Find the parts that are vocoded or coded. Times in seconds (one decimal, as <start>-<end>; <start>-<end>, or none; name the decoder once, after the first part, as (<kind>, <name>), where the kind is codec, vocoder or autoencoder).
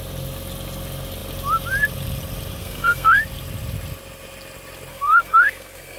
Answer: 2.6-3.2 (codec, SNAC); 4.9-6.0